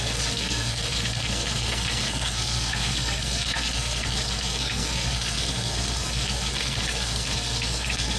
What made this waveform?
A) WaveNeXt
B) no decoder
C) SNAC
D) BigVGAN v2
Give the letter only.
C